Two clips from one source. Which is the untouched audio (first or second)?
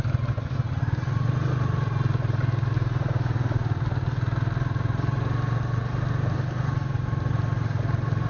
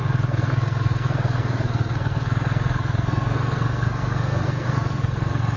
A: first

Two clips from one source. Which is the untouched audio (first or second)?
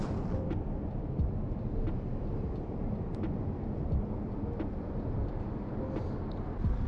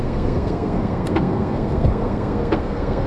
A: first